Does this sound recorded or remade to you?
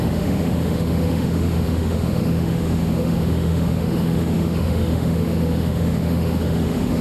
remade